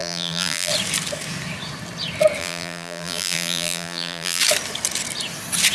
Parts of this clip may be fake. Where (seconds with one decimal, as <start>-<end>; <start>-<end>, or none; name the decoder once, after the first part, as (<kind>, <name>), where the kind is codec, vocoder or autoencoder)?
0.0-0.7 (vocoder, BigVGAN v2); 2.4-4.4